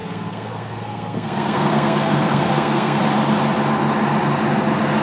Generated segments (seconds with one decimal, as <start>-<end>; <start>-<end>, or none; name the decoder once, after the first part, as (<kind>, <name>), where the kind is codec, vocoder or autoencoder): 0.0-3.0 (codec, SNAC)